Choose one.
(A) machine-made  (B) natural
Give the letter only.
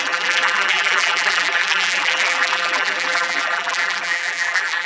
A